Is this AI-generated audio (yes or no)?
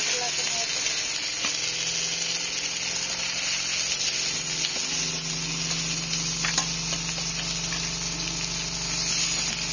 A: no